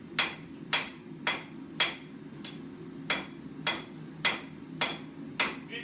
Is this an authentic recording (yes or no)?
yes